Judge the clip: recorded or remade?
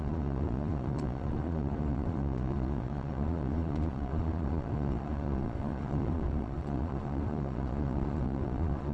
remade